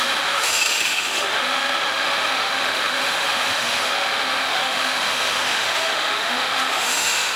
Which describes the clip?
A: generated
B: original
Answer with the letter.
A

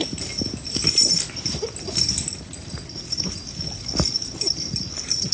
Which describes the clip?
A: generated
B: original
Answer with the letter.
B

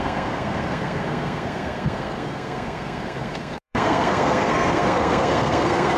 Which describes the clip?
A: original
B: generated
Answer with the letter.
B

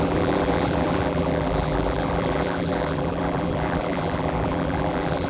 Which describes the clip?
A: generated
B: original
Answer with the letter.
A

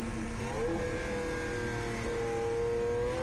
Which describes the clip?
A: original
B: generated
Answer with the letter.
A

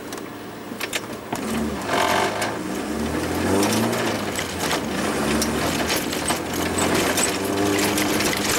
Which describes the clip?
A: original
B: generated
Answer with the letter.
A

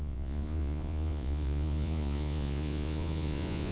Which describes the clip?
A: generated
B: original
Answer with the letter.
A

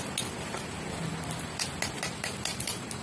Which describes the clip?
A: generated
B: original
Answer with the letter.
B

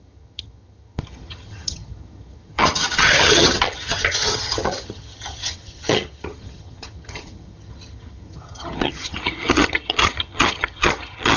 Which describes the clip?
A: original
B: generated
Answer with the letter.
B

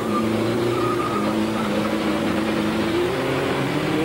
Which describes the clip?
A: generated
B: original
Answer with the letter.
A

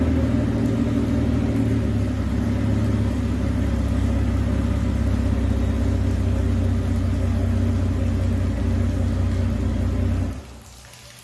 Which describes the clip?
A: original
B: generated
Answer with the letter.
A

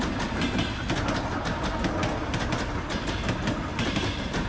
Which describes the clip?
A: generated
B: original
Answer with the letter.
B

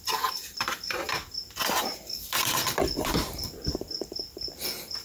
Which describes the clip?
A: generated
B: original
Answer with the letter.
A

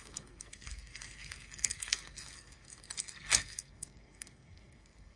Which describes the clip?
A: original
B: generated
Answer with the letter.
B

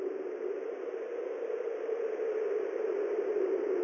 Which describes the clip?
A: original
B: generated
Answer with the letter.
A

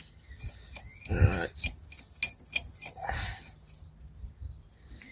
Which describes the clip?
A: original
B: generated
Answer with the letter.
A